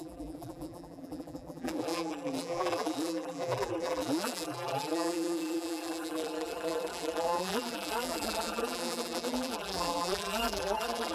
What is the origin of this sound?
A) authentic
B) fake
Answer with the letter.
B